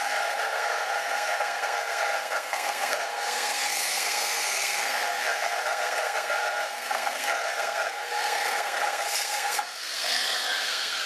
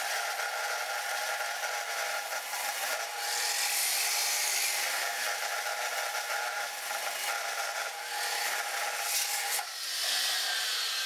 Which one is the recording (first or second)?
second